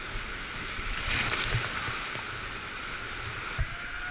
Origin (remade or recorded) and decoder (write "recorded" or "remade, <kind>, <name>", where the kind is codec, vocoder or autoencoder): recorded